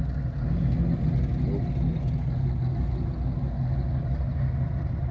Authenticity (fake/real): real